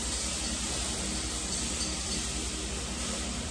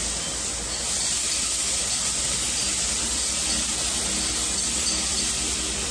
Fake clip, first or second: first